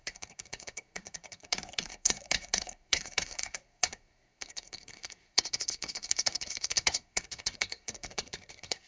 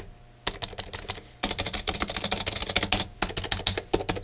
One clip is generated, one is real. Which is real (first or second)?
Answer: second